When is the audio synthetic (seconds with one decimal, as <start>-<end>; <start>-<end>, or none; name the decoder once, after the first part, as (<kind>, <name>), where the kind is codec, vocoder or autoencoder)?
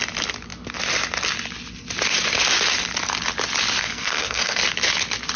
3.8-4.6 (codec, SNAC)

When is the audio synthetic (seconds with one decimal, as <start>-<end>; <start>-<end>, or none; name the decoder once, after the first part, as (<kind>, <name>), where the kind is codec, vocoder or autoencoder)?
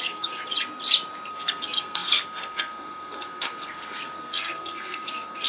0.0-0.4 (codec, SNAC); 1.3-5.5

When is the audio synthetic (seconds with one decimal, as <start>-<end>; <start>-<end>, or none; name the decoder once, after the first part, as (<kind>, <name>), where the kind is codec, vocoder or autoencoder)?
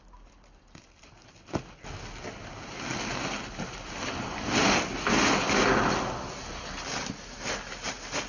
none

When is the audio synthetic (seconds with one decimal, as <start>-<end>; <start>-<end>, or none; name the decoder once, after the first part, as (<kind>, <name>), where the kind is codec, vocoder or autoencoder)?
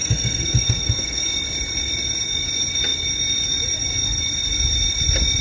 0.0-1.2 (codec, SNAC)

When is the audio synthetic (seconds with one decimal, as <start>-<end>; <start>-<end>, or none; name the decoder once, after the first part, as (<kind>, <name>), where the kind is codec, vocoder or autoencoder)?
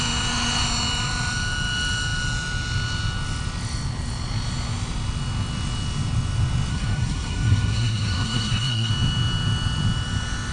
6.7-8.9 (codec, SNAC)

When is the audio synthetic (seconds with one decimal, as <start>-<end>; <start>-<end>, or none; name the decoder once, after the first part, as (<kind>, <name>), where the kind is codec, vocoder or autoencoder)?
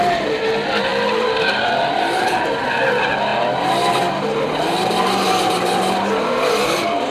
none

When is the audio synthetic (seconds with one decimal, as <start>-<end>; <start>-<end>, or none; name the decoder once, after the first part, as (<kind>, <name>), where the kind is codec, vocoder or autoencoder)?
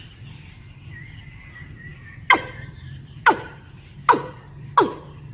none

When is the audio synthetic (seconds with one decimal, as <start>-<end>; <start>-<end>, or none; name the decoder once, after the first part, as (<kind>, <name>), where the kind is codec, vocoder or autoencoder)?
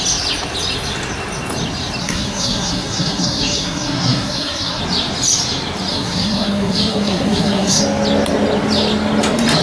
2.0-4.8 (codec, SNAC); 5.9-7.8